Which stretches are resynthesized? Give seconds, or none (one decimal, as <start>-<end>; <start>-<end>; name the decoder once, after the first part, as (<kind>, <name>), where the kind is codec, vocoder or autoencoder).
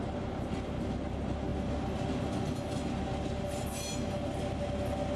none